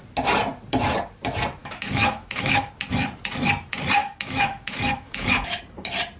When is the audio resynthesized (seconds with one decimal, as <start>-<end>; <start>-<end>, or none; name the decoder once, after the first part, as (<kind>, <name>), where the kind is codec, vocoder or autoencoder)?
1.6-2.7 (autoencoder, DAC-VAE); 4.0-5.6